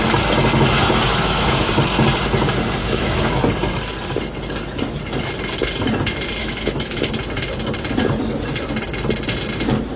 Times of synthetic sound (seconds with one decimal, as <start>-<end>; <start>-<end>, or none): 0.8-1.7; 2.8-3.4; 6.4-7.1

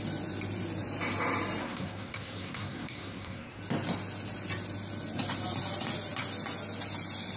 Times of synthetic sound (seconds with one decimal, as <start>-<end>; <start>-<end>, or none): 1.6-3.6

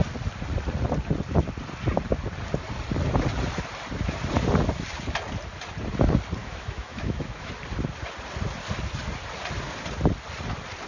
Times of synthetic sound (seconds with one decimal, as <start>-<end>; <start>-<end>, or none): 6.4-7.5

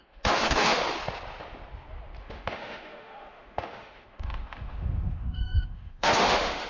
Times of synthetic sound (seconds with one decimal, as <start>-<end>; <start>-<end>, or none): 0.0-0.8; 2.2-6.7

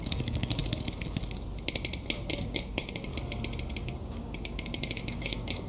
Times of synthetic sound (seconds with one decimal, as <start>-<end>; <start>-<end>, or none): 0.0-0.6; 2.3-3.1; 3.8-5.7

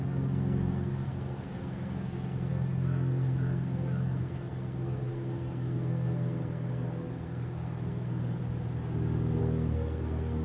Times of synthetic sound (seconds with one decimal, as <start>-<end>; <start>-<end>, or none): 0.0-8.4; 9.4-10.4

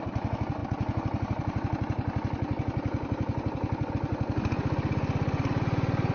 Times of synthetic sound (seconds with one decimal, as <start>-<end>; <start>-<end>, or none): none